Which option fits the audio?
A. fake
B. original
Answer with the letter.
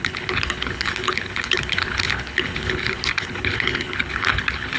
A